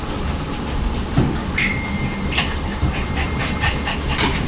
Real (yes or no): no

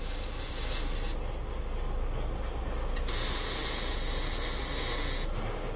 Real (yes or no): yes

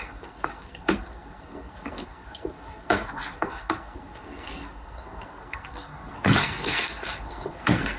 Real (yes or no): no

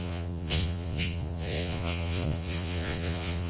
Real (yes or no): no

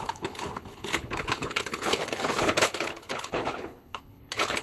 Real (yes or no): no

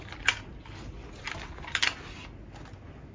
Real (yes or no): yes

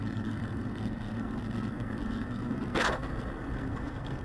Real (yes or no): no